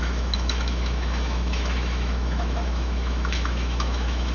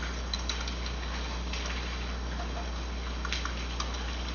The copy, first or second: first